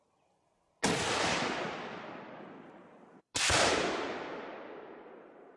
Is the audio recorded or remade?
recorded